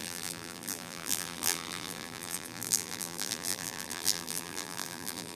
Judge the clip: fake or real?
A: fake